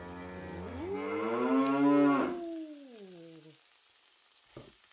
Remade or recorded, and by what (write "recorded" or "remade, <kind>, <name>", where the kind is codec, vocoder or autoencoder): recorded